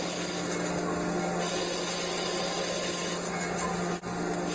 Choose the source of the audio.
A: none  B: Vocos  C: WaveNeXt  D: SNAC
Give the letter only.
A